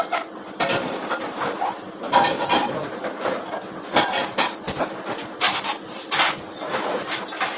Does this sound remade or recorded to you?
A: recorded